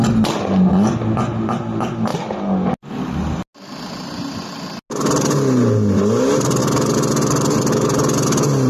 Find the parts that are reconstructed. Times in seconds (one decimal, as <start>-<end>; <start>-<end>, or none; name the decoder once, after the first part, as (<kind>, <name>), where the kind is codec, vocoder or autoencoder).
none

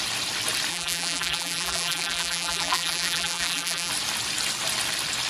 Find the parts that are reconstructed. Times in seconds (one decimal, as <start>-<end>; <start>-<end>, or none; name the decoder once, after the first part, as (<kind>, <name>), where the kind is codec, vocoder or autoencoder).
0.7-3.9 (vocoder, BigVGAN v2)

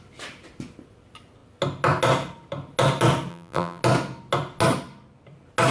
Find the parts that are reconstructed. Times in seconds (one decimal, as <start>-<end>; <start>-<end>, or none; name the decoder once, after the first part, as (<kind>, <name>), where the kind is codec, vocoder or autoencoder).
3.3-3.8 (vocoder, BigVGAN v2)

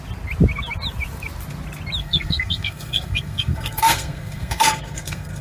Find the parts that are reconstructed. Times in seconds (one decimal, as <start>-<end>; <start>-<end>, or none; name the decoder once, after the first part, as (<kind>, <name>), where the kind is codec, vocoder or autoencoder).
2.0-5.4 (codec, SNAC)

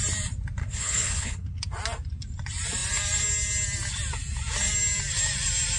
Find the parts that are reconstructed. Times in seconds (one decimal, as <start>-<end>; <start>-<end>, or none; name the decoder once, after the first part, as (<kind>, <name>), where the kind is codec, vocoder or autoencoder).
0.6-1.6 (codec, HILCodec)

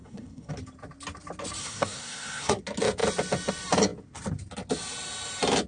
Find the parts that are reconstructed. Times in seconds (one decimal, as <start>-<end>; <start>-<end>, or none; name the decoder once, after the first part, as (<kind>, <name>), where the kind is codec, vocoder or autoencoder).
0.0-0.5 (codec, SNAC); 1.6-2.6

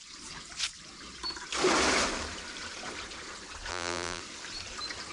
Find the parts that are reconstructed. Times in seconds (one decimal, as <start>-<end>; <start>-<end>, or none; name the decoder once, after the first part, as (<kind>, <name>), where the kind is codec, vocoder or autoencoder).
3.7-4.2 (vocoder, BigVGAN v2)